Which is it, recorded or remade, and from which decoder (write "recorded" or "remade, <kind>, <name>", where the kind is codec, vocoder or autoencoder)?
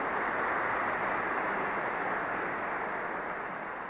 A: recorded